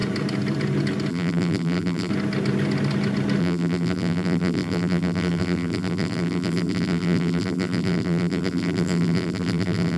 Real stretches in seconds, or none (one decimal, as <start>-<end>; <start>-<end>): 0.0-1.1; 2.1-3.4